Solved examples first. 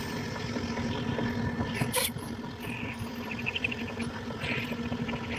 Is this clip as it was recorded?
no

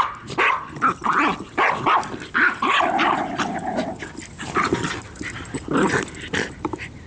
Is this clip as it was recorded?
yes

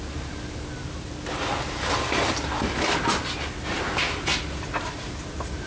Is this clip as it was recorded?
yes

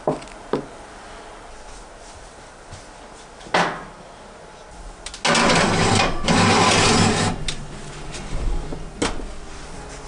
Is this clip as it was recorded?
yes